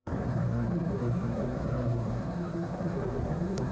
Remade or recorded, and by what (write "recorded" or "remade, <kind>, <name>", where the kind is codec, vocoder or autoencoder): remade, codec, SNAC